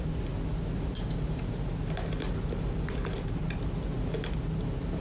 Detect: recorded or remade recorded